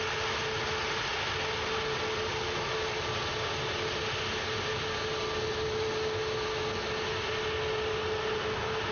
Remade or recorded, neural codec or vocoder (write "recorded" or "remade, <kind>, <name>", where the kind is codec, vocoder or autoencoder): recorded